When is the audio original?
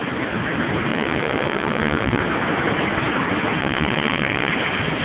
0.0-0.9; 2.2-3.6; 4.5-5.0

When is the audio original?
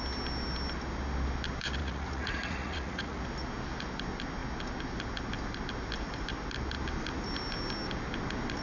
0.0-1.8; 3.2-8.6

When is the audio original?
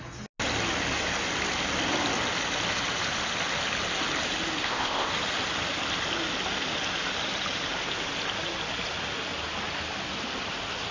0.0-4.6; 5.1-10.9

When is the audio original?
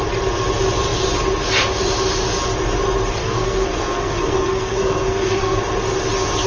0.0-3.2; 5.6-6.5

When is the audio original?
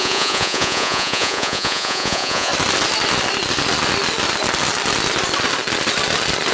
2.5-6.5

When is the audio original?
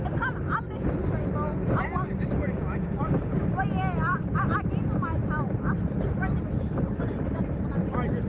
0.0-8.3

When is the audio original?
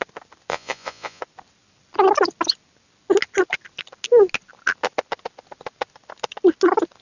0.0-0.5; 1.2-7.0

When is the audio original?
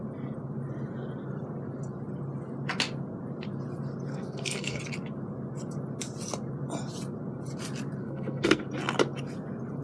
0.0-4.1; 4.8-8.0; 8.6-9.8